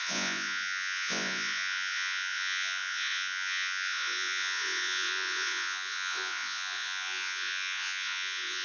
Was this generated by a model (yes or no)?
yes